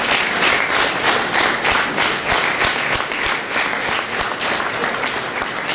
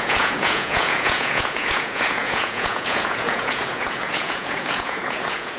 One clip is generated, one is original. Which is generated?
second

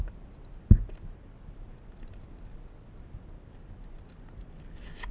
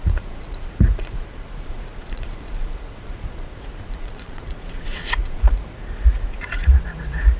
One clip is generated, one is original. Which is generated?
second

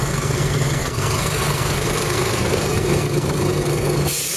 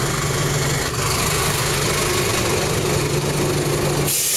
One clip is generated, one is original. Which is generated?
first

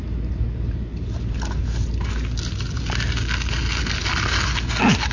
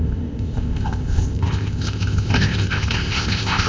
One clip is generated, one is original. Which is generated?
second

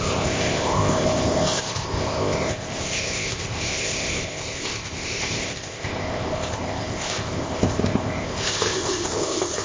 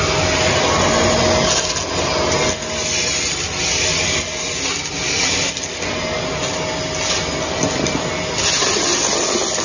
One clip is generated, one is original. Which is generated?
first